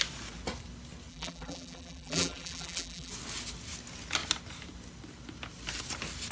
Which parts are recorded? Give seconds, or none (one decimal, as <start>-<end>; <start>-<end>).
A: 0.0-1.1; 3.1-6.3